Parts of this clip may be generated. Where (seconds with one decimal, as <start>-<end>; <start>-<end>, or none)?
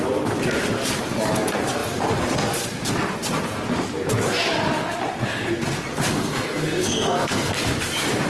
6.1-7.5